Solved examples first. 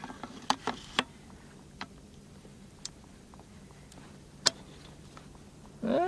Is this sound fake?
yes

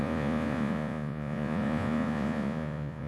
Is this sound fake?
yes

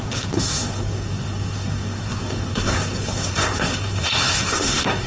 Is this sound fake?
yes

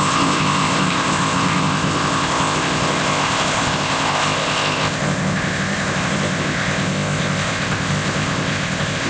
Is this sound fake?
yes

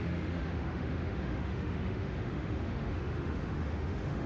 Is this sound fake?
yes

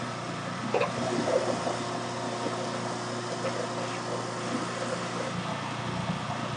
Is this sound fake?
no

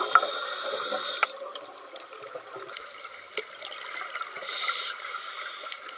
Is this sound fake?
no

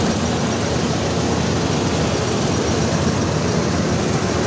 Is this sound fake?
no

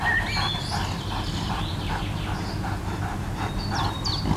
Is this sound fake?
no